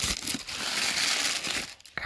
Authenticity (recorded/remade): recorded